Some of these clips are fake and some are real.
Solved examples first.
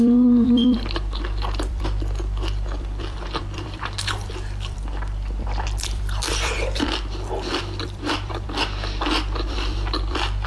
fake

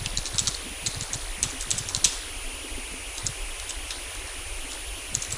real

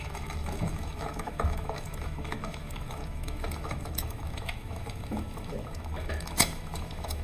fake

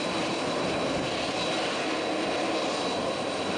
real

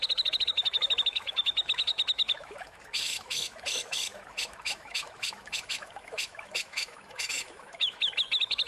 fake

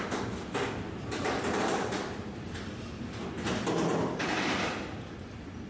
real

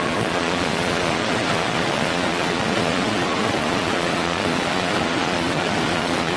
fake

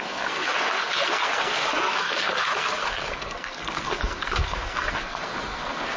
fake